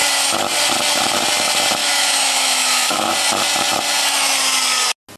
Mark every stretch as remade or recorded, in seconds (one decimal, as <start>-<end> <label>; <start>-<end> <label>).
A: 0.0-1.8 recorded; 1.8-3.1 remade; 3.1-5.2 recorded